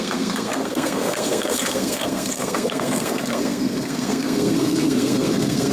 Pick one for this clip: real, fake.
fake